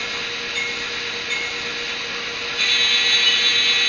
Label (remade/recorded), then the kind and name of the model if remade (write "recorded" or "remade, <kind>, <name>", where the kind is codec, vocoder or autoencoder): recorded